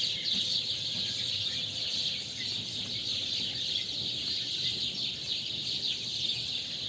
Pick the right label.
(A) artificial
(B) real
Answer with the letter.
B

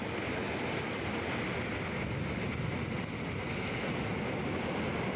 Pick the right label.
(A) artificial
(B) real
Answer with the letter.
B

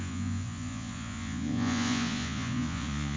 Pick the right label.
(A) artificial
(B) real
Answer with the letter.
A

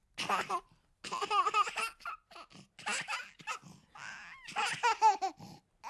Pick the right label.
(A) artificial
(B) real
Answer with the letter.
B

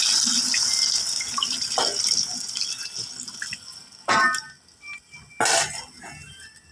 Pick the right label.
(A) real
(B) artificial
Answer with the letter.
A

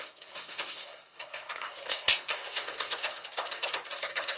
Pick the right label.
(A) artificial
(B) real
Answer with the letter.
A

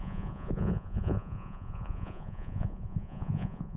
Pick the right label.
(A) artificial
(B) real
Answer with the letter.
A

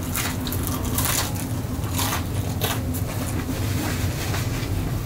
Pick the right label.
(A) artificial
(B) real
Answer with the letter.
B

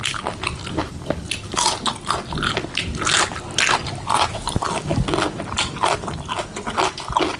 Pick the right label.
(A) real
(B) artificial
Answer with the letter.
A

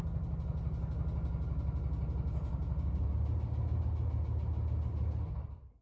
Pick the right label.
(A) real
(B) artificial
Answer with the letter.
A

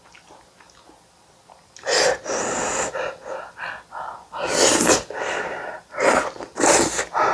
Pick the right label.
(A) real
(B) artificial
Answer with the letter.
A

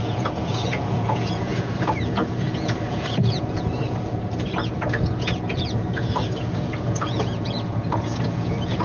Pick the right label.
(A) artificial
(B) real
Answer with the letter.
A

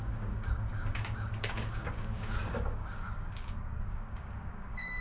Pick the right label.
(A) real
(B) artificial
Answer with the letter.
B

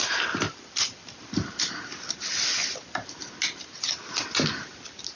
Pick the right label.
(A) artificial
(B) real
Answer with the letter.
B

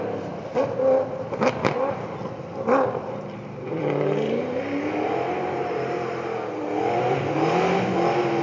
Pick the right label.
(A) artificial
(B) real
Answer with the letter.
B